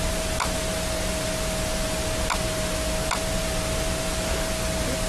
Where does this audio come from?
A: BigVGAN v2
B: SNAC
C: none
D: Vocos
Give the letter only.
C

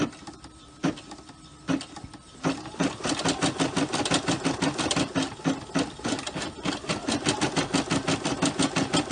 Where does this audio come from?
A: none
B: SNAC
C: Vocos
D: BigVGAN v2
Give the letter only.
A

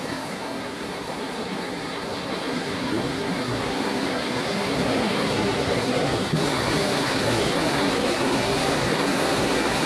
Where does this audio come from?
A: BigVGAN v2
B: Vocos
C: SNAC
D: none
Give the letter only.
C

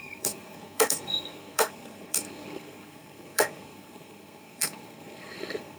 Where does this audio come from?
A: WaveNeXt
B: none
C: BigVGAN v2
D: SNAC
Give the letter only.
D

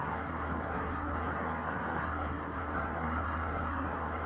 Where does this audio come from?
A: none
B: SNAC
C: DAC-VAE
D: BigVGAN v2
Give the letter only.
B